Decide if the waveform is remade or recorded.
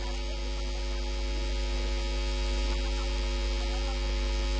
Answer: recorded